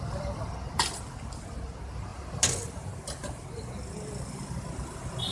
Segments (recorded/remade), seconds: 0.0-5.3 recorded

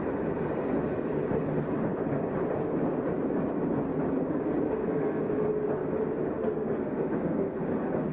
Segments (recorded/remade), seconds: 0.0-4.8 recorded; 4.8-5.3 remade; 5.3-6.4 recorded; 6.4-7.6 remade; 7.6-8.1 recorded

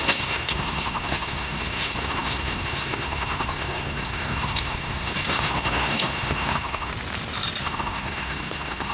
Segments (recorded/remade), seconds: 0.0-6.9 remade; 6.9-7.6 recorded; 7.6-8.9 remade

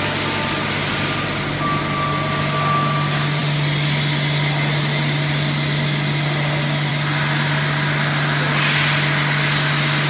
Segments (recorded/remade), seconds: 0.0-10.1 recorded

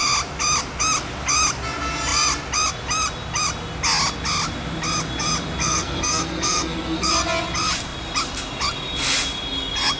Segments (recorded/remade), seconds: 0.0-5.6 recorded; 5.6-7.1 remade; 7.1-10.0 recorded

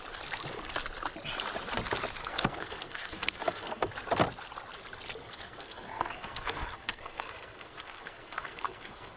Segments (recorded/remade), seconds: 0.0-2.2 recorded; 2.2-3.9 remade; 3.9-5.2 recorded; 5.2-9.2 remade

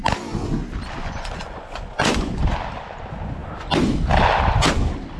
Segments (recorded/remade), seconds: 0.0-1.0 recorded; 1.0-2.5 remade; 2.5-5.2 recorded

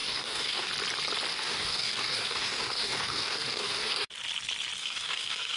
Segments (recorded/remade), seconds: 0.0-0.7 remade; 0.7-1.3 recorded; 1.3-4.1 remade; 4.1-4.8 recorded; 4.8-5.6 remade